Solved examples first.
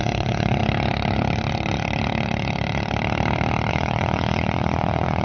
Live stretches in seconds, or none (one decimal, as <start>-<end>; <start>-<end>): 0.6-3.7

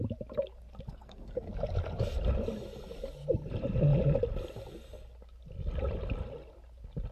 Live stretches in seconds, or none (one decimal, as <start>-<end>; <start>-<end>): 0.0-0.9; 1.5-7.1

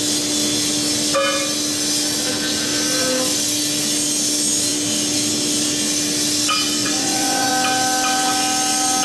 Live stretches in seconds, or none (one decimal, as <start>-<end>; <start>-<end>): 0.0-6.8; 7.5-9.0